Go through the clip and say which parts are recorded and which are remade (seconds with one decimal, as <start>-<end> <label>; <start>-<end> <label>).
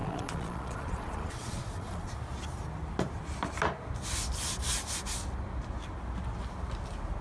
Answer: 0.0-2.1 remade; 2.1-7.2 recorded